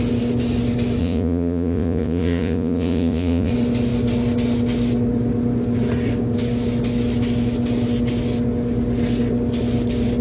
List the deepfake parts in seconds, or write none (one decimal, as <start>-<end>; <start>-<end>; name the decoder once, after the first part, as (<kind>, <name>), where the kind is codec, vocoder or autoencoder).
1.0-3.5 (vocoder, Vocos)